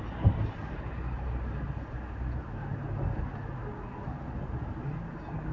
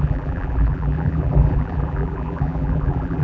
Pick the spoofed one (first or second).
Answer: second